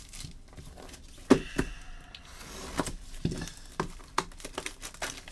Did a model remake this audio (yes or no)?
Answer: no